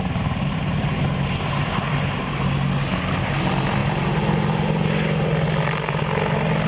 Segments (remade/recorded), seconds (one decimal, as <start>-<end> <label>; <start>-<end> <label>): 0.0-6.7 recorded